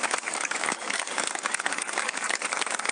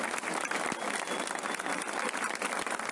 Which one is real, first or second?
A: second